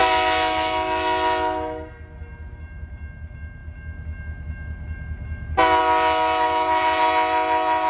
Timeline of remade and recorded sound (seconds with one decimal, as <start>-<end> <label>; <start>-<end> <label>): 0.0-7.9 recorded